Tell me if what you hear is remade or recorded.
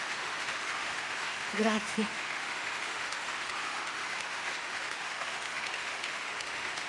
remade